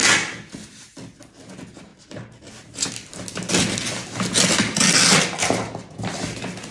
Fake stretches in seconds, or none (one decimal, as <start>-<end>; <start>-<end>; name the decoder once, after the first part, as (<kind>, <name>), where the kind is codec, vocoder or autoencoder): 1.9-2.9 (vocoder, BigVGAN v2)